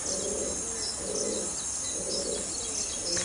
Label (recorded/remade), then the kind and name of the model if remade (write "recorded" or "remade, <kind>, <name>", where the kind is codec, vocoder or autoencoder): recorded